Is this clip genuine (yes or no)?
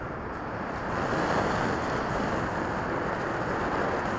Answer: yes